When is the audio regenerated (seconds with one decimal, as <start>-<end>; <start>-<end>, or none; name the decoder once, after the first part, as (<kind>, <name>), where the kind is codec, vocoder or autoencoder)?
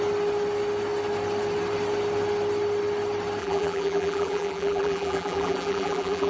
3.4-6.3 (vocoder, BigVGAN v2)